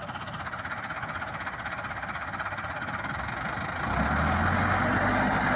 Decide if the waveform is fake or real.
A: real